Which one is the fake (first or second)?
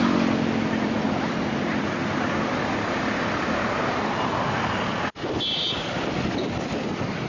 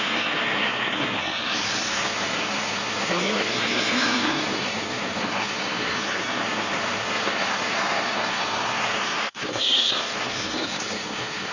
second